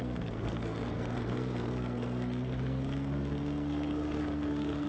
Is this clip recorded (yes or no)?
no